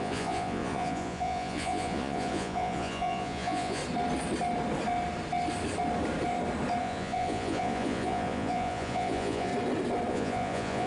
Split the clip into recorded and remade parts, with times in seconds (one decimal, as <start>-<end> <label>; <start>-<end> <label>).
0.0-3.8 remade; 3.8-6.8 recorded; 6.8-9.5 remade; 9.5-10.1 recorded; 10.1-10.9 remade